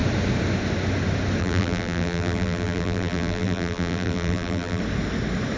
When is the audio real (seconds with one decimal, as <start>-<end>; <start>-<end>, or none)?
0.0-1.4; 4.8-5.6